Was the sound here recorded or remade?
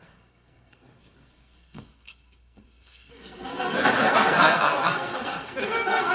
remade